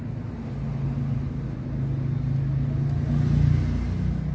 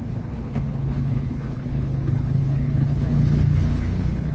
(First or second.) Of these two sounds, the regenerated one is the second